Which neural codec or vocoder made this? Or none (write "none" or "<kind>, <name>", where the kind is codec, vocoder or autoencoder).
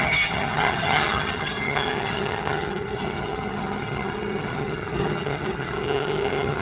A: vocoder, HiFi-GAN